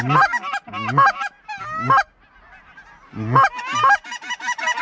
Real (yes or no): yes